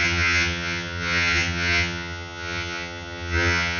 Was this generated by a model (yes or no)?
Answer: yes